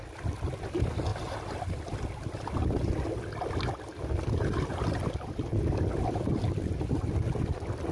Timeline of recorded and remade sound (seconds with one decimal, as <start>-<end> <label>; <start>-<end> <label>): 0.0-7.9 recorded